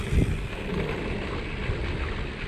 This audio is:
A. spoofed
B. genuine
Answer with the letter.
B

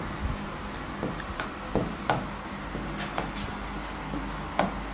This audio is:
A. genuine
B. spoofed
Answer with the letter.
A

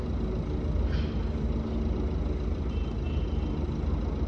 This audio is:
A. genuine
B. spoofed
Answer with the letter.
A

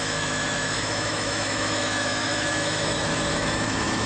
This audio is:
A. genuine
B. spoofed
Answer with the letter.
B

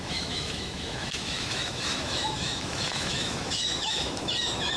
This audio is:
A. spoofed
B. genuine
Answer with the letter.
A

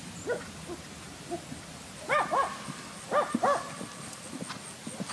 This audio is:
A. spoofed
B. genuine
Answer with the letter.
B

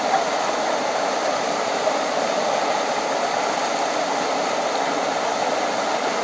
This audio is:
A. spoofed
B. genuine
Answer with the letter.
B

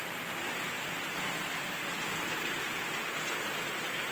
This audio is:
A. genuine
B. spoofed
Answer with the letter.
A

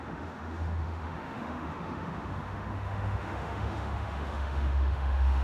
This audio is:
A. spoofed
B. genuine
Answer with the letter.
A